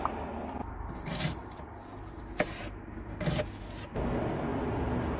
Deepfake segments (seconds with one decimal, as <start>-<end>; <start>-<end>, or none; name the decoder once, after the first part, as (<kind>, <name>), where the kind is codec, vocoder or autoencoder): 0.6-3.4 (vocoder, BigVGAN v2)